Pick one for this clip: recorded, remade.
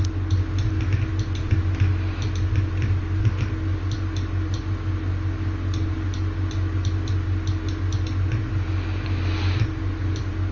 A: recorded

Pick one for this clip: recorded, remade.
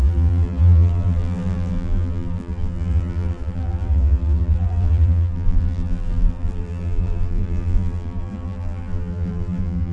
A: remade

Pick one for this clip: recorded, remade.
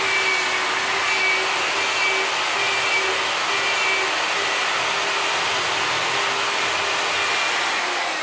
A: recorded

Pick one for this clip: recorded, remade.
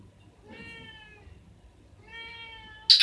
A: recorded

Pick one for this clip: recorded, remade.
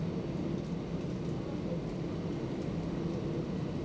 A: recorded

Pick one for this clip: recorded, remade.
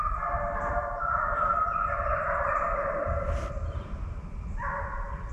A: recorded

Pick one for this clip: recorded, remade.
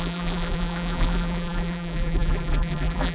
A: remade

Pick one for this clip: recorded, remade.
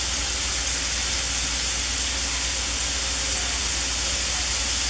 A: recorded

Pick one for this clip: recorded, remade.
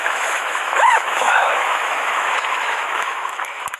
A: remade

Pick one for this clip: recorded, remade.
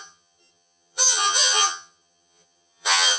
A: remade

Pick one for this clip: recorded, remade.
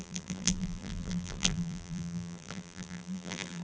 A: remade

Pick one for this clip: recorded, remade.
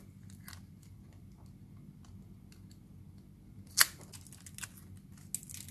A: recorded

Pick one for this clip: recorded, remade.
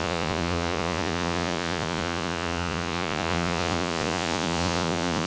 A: remade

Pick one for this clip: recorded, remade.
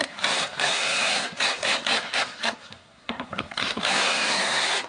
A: remade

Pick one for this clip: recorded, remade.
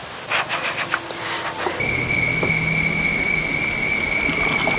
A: recorded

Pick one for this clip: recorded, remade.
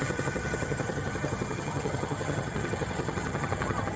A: remade